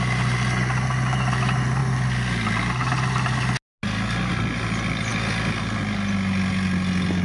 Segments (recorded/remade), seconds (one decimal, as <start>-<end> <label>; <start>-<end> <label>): 0.0-7.2 recorded